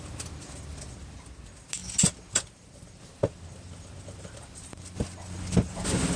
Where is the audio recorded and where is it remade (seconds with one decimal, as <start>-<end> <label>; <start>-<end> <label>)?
0.0-6.2 recorded